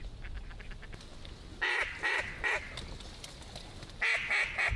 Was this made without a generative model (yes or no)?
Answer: yes